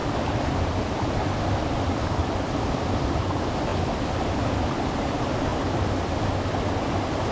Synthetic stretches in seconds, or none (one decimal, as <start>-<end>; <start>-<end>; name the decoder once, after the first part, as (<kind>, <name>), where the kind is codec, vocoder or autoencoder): 0.0-3.2 (vocoder, BigVGAN v2); 5.5-6.1